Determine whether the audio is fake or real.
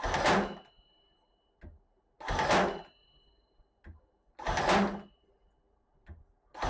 real